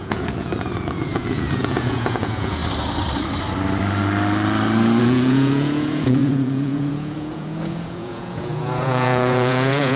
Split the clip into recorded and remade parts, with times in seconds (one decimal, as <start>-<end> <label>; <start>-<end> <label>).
0.0-2.6 remade; 2.6-5.0 recorded; 5.0-10.0 remade